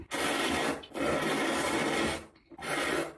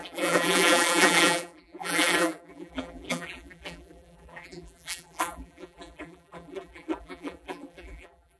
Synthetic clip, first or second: second